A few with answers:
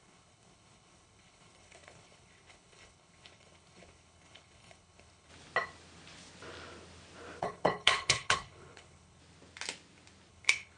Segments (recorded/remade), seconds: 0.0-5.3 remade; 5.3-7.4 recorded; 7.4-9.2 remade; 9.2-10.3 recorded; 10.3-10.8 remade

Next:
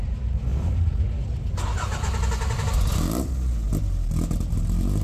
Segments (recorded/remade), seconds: 0.0-5.0 recorded